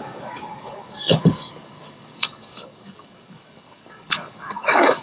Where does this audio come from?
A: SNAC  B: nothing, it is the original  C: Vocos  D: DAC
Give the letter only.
D